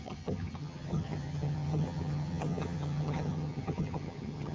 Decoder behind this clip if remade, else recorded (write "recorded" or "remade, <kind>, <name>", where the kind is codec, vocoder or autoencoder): remade, vocoder, HiFi-GAN